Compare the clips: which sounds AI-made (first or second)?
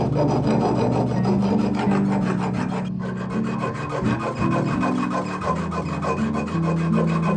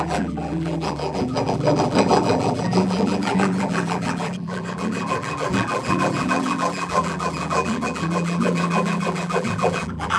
second